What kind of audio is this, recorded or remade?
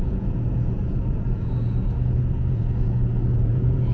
remade